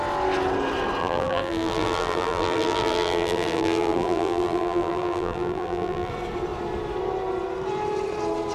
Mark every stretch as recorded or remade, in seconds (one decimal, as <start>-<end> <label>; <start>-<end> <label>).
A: 0.0-1.0 recorded; 1.0-6.1 remade; 6.1-8.5 recorded